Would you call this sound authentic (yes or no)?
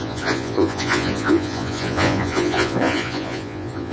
no